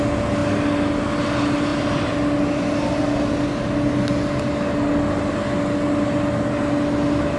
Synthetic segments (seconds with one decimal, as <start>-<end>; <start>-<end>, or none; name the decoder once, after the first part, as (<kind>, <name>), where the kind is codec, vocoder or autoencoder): none

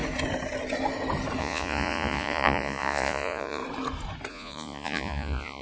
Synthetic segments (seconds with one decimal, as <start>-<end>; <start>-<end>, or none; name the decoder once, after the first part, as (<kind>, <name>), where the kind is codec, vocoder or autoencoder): 1.4-3.6 (vocoder, Vocos); 4.3-5.6